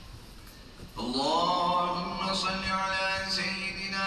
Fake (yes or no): no